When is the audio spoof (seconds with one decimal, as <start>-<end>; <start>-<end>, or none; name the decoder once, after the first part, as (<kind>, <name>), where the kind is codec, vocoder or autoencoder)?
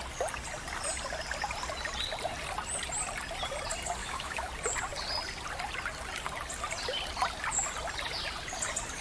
4.0-4.5 (autoencoder, DAC-VAE)